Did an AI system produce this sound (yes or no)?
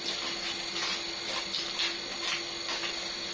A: no